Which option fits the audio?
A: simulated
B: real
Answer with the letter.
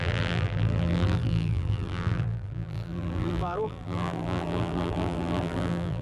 A